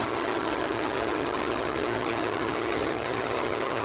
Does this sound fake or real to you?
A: fake